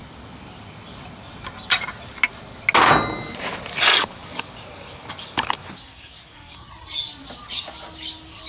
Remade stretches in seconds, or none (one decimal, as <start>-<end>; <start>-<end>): 3.9-6.7